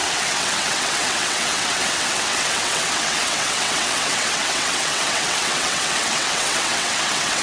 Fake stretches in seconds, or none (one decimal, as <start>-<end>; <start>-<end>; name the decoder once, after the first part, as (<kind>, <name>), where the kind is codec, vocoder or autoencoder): 0.0-7.4 (vocoder, WaveNeXt)